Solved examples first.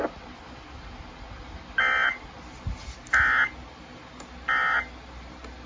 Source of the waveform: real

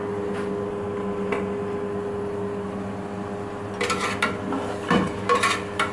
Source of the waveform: real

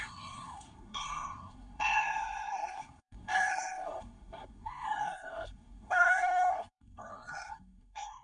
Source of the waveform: fake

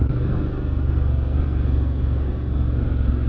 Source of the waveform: fake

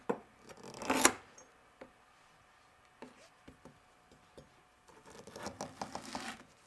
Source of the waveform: real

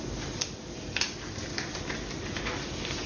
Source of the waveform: real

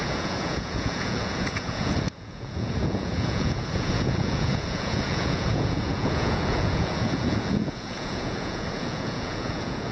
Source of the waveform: fake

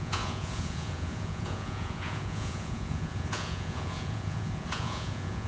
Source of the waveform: fake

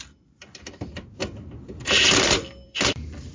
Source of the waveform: fake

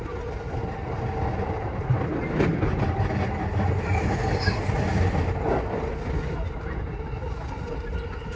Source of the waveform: real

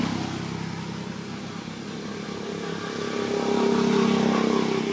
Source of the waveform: real